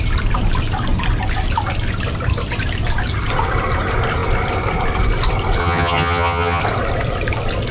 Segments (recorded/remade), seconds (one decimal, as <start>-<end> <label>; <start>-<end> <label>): 0.0-5.6 recorded; 5.6-6.6 remade; 6.6-7.7 recorded